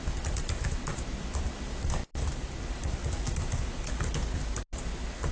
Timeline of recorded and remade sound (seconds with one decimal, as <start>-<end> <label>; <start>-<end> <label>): 0.0-5.3 recorded